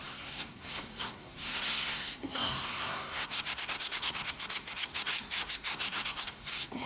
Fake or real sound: fake